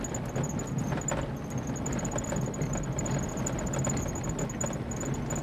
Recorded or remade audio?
recorded